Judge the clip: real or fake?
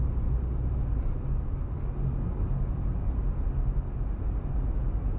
real